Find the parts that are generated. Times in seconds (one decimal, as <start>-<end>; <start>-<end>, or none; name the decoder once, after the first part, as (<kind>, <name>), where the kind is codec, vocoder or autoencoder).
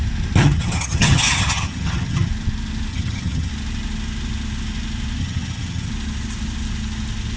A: 0.4-2.3 (vocoder, HiFi-GAN); 2.9-3.5; 5.2-5.9